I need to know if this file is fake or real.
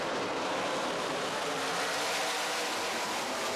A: fake